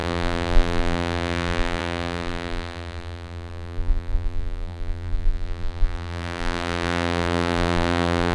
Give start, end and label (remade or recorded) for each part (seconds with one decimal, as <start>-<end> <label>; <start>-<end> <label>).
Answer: 0.0-8.3 remade